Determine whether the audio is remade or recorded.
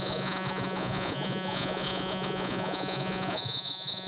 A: remade